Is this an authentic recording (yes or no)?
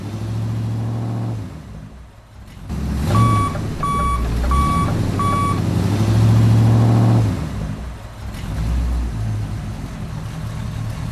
yes